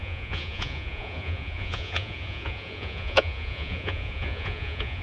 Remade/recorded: remade